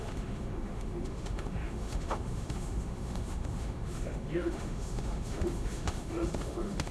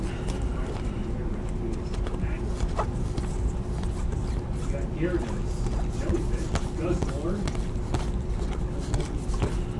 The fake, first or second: first